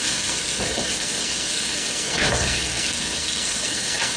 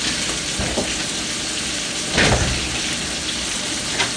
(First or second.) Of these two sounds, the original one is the second